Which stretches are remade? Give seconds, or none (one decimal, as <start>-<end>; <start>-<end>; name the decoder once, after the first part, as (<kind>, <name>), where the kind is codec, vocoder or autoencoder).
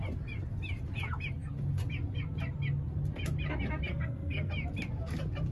3.9-4.5 (codec, SNAC)